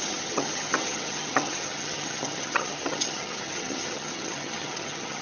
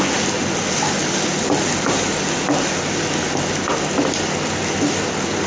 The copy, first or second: first